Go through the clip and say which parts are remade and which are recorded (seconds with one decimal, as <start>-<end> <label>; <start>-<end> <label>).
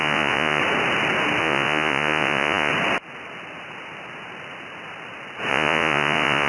0.0-0.6 remade; 0.6-1.4 recorded; 1.4-2.7 remade; 2.7-5.5 recorded; 5.5-6.5 remade